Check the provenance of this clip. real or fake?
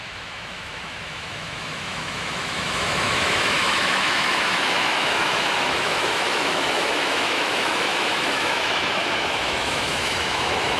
fake